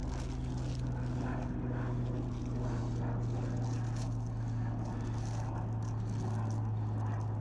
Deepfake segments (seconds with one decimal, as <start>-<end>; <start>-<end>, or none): none